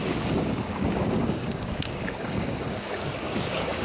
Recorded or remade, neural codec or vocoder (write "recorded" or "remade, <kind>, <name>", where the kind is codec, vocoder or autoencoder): remade, codec, DAC